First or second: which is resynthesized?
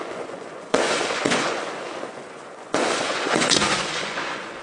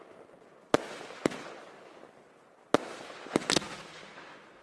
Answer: first